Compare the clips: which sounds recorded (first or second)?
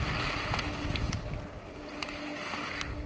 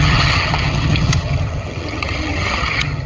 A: first